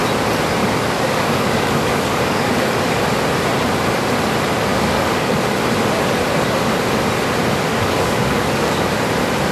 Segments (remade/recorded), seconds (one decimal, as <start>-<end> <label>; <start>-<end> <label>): 0.0-0.6 recorded; 0.6-3.0 remade; 3.0-4.7 recorded; 4.7-5.5 remade; 5.5-7.7 recorded; 7.7-8.9 remade; 8.9-9.5 recorded